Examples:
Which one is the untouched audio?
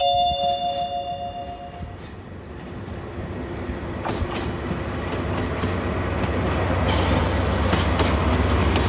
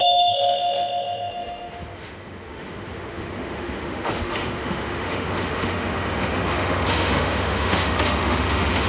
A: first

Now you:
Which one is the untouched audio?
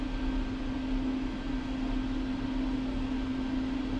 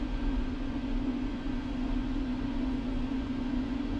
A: first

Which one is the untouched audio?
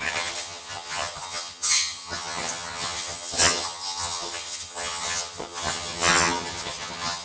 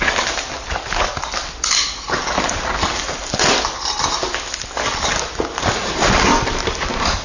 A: second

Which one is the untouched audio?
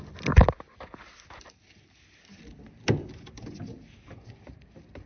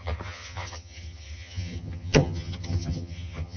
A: first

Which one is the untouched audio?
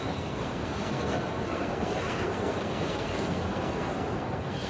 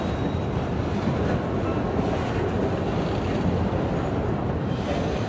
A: second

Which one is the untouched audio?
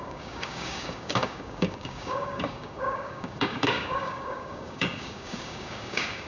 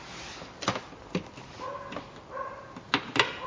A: second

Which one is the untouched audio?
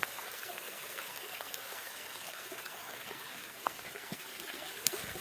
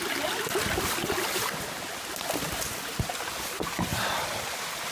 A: second